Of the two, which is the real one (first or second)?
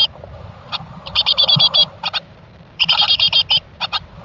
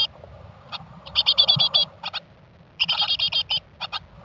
second